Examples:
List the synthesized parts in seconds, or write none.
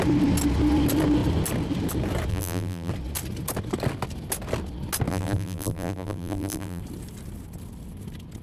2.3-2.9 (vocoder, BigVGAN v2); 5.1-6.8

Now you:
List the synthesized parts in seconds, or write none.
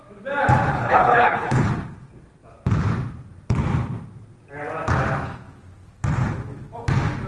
0.7-1.7 (codec, HILCodec)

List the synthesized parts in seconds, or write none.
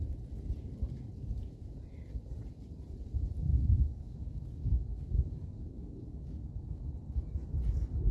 3.5-6.8 (codec, DAC)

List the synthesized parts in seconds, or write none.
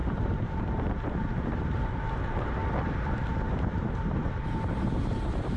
0.0-2.6 (vocoder, BigVGAN v2); 3.1-5.6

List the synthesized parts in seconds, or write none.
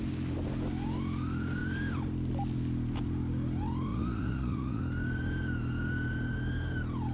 3.9-4.8 (vocoder, Vocos)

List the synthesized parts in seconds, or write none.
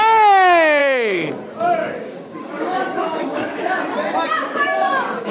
0.8-1.3 (codec, DAC); 1.8-3.8; 4.3-5.3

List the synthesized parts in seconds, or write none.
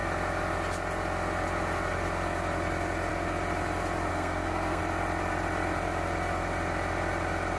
4.1-4.8 (codec, SNAC)